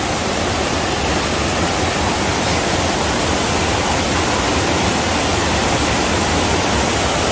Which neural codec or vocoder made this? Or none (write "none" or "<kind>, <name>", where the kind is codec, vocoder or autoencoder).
none